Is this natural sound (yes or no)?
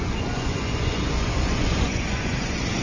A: no